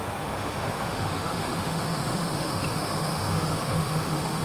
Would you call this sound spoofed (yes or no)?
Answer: yes